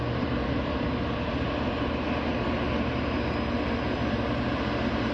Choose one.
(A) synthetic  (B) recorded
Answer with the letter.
B